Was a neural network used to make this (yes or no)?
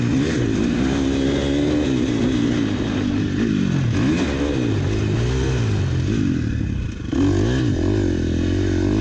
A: no